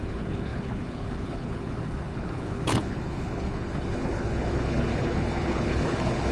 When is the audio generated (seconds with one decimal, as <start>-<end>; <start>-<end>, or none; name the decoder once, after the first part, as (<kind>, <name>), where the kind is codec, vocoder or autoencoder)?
0.0-6.3 (codec, HILCodec)